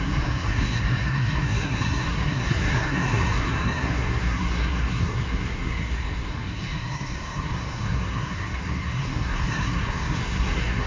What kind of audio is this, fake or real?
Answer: fake